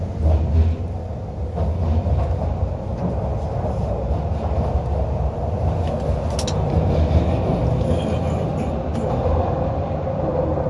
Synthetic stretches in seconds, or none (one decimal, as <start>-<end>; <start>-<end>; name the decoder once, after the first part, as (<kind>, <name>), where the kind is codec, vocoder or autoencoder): none